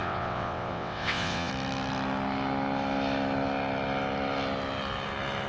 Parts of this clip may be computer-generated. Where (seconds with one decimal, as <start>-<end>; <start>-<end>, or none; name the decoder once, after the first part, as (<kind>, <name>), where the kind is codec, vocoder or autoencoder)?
0.0-1.5 (vocoder, WaveNeXt)